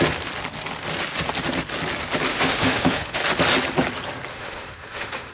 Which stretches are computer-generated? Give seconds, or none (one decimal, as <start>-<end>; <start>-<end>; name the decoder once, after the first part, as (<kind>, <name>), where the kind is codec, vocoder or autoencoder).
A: 2.3-3.2 (autoencoder, DAC-VAE); 4.3-5.3